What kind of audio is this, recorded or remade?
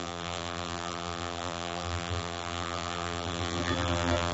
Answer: remade